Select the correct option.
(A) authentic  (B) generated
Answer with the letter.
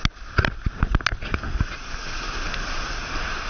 A